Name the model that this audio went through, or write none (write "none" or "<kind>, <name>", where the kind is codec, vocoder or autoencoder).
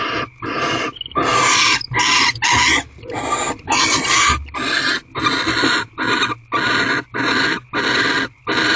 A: none